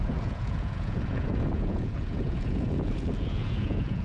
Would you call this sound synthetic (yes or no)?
yes